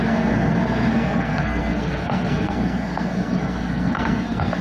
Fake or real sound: fake